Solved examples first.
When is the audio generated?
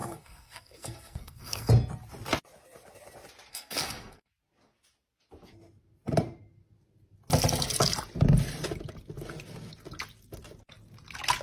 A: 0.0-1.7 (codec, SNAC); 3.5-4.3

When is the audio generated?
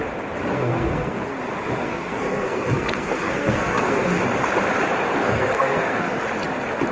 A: 0.5-1.4 (codec, SNAC); 1.8-4.2; 5.2-6.2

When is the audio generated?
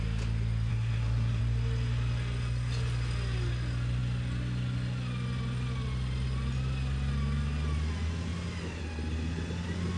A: 0.7-1.4 (codec, SNAC)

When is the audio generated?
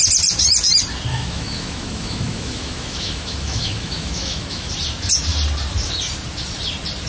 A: 1.1-4.7 (autoencoder, DAC-VAE)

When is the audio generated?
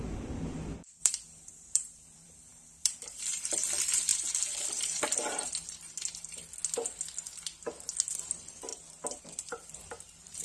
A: 0.0-4.1 (vocoder, BigVGAN v2); 6.1-6.6; 8.1-8.7; 9.2-10.4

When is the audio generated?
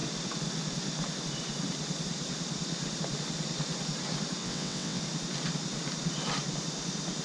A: 4.4-5.0 (vocoder, WaveNeXt)